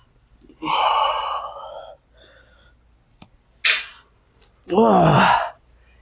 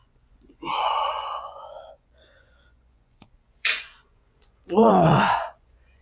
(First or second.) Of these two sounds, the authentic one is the first